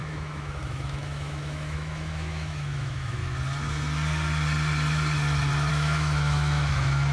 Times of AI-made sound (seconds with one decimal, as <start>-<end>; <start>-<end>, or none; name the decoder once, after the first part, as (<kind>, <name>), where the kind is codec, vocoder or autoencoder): 0.0-3.2 (autoencoder, DAC-VAE); 5.7-7.1